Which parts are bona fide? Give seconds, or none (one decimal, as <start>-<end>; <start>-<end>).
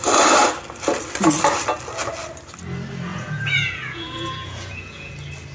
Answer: 0.0-3.1; 5.1-5.5